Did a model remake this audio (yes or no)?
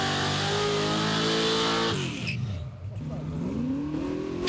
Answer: no